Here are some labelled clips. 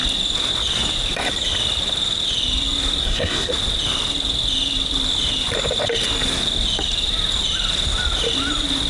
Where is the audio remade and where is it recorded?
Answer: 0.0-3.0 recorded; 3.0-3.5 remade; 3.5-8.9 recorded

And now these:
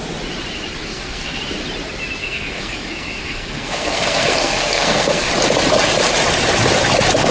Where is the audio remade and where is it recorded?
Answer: 0.0-0.9 recorded; 0.9-1.4 remade; 1.4-2.2 recorded; 2.2-5.3 remade; 5.3-7.3 recorded

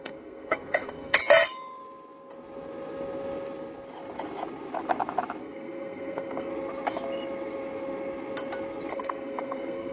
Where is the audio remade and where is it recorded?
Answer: 0.0-1.2 remade; 1.2-5.4 recorded; 5.4-6.5 remade; 6.5-8.9 recorded; 8.9-9.9 remade

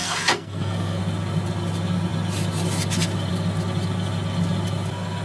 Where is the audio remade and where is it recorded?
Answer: 0.0-1.0 remade; 1.0-5.2 recorded

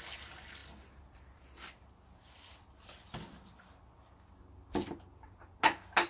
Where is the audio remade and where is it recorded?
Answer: 0.0-6.1 recorded

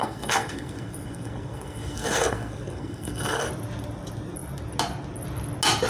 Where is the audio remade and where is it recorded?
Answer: 0.0-3.5 remade; 3.5-5.9 recorded

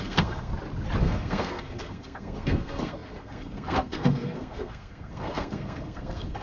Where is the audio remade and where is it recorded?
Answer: 0.0-0.5 remade; 0.5-1.0 recorded; 1.0-6.4 remade

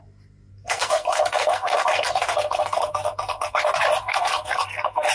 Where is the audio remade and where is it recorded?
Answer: 0.0-0.5 recorded; 0.5-3.6 remade; 3.6-4.0 recorded; 4.0-5.1 remade